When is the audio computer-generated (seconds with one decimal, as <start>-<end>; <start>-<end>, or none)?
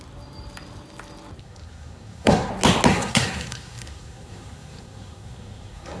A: 1.4-2.5; 2.9-6.0